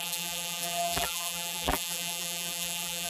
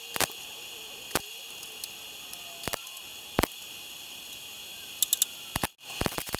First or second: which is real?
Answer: second